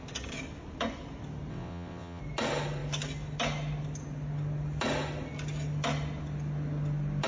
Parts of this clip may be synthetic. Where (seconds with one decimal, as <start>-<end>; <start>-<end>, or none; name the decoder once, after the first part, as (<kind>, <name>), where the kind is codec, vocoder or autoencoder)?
1.5-2.2 (vocoder, WaveNeXt)